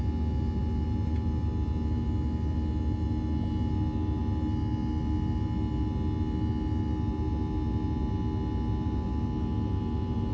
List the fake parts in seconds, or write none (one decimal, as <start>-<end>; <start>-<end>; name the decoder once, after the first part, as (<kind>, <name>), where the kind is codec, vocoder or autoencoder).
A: none